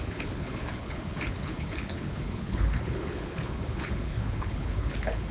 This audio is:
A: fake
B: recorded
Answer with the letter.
A